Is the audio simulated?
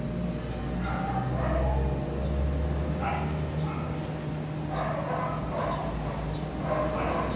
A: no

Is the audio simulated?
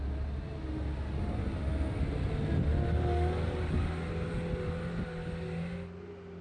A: no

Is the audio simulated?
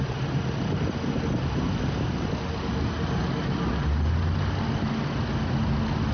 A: no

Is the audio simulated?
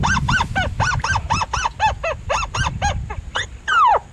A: no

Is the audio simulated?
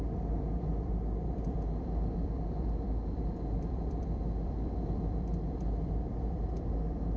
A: yes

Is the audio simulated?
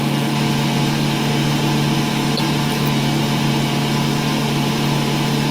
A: no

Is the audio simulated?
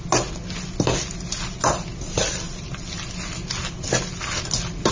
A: no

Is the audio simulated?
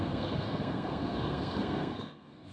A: yes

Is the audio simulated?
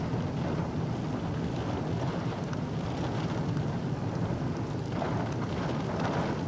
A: no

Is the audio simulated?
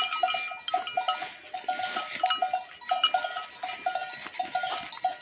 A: no